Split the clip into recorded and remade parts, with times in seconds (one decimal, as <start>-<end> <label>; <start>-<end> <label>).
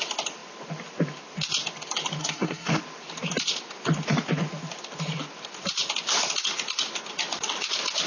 0.0-2.2 recorded; 2.2-2.8 remade; 2.8-8.1 recorded